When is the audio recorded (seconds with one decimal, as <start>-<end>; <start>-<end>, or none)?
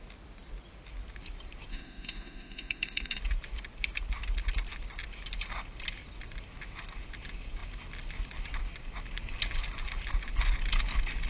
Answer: 0.0-1.7; 3.2-11.3